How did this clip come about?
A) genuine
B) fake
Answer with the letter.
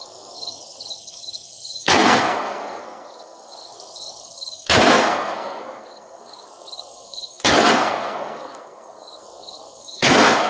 B